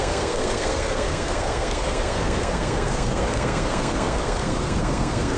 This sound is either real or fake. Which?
fake